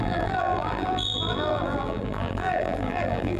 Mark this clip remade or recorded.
remade